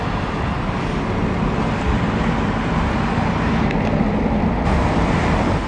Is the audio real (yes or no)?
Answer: yes